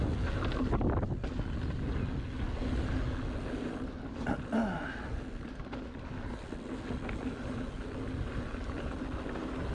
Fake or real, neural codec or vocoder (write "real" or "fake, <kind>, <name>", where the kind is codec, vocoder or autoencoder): real